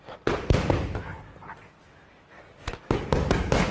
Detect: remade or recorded recorded